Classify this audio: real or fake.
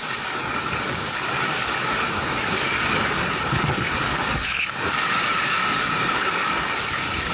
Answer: fake